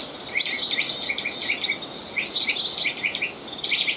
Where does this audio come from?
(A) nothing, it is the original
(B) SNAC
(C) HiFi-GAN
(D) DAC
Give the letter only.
A